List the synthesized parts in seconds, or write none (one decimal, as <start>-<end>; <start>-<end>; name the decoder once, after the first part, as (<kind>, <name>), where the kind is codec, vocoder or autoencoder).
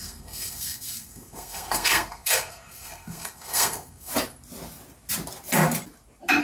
0.0-4.1 (codec, SNAC)